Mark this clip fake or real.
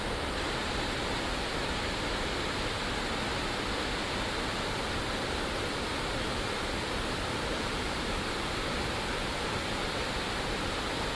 real